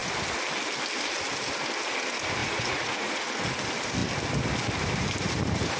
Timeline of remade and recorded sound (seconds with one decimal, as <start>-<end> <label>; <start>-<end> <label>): 0.0-2.4 recorded; 2.4-3.3 remade; 3.3-5.8 recorded